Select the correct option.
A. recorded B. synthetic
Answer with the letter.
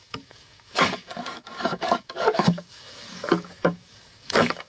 B